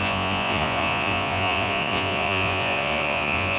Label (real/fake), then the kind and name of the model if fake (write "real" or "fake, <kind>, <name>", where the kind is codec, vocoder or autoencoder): fake, vocoder, Vocos